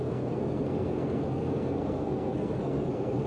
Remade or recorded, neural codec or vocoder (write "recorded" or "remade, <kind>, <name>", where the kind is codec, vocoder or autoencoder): remade, codec, SNAC